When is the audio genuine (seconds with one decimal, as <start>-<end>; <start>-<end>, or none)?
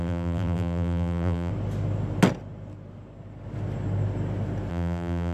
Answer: 1.5-4.7